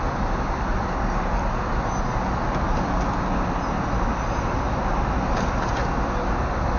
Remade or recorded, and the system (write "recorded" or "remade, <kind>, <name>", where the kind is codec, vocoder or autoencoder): recorded